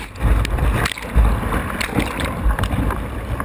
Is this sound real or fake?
real